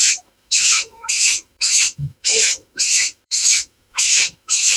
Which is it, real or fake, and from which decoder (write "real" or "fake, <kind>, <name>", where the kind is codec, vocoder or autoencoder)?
fake, autoencoder, DAC-VAE